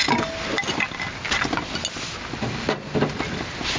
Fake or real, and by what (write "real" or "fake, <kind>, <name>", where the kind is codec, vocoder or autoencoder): real